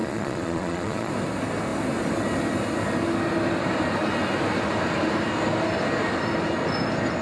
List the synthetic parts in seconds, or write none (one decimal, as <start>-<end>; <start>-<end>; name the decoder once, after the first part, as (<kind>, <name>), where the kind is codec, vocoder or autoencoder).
0.0-1.1 (vocoder, Vocos)